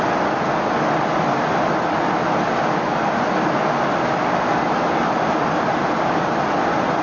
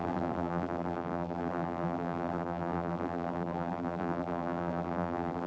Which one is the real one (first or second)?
first